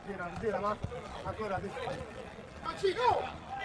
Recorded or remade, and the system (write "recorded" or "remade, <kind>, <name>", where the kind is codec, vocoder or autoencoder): remade, vocoder, Vocos